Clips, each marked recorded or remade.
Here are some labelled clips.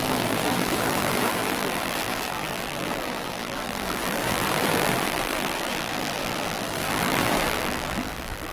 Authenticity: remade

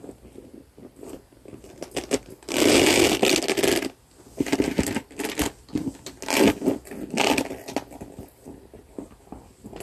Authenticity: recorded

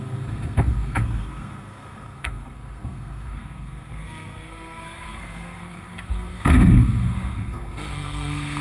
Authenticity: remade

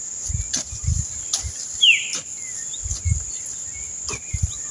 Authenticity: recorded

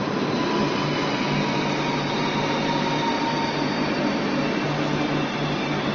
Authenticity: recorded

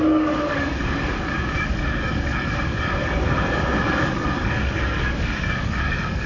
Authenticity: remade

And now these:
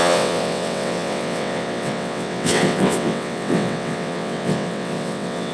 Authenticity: remade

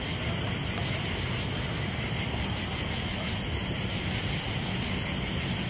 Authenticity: recorded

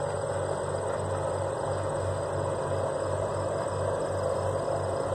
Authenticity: recorded